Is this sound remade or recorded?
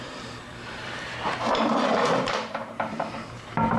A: remade